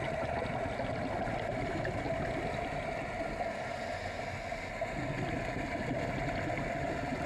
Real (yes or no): yes